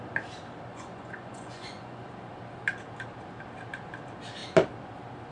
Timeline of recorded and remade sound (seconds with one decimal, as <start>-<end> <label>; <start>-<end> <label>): 0.0-0.7 recorded; 0.7-2.1 remade; 2.1-5.3 recorded